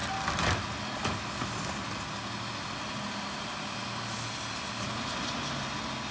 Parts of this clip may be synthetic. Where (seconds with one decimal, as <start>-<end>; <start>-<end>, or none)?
none